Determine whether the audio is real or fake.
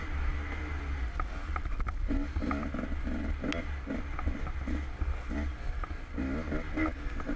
real